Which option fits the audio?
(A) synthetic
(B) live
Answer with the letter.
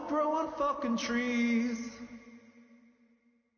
B